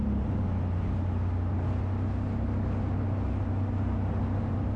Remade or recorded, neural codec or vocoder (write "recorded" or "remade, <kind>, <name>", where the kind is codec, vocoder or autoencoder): recorded